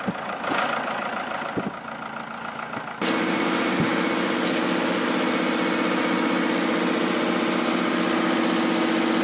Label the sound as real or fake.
real